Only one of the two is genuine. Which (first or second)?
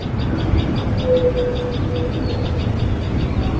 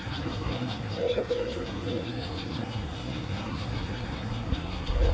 first